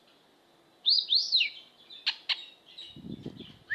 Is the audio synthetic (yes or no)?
no